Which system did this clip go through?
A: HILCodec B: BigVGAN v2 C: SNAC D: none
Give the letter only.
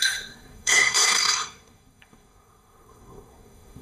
C